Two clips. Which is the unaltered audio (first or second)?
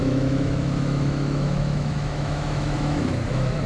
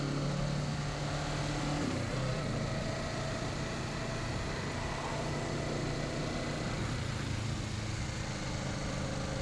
second